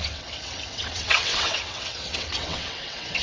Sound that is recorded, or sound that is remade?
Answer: remade